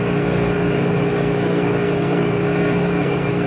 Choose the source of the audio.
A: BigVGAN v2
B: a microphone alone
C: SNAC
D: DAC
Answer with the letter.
C